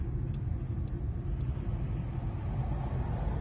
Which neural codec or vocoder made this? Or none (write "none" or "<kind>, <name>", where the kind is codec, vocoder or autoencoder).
none